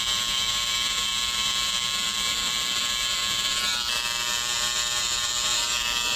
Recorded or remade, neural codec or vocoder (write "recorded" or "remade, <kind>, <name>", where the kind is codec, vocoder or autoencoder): remade, vocoder, BigVGAN v2